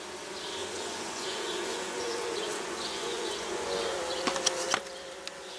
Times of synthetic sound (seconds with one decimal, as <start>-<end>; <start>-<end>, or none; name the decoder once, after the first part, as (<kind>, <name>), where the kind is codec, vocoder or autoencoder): 0.6-4.0 (vocoder, Vocos)